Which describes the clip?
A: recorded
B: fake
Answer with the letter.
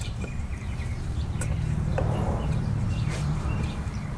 B